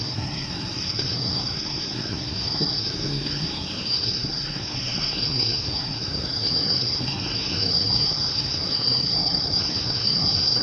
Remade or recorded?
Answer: remade